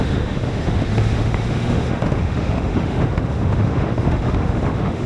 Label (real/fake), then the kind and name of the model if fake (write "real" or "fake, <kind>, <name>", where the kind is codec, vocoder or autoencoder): fake, autoencoder, DAC-VAE